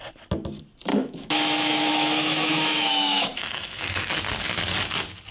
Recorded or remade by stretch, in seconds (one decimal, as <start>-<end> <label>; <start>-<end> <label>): 0.0-0.9 recorded; 0.9-4.1 remade; 4.1-5.3 recorded